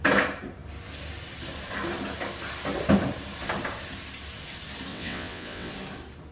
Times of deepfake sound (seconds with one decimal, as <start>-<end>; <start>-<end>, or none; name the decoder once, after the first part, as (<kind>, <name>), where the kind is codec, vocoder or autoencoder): 4.9-5.7 (vocoder, WaveNeXt)